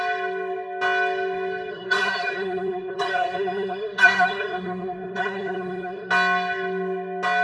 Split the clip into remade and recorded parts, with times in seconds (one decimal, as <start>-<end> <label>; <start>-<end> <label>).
0.0-1.7 recorded; 1.7-6.1 remade; 6.1-7.4 recorded